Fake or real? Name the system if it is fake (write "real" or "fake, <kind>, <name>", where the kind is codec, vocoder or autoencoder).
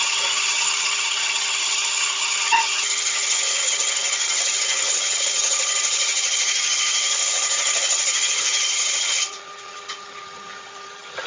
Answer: fake, vocoder, HiFi-GAN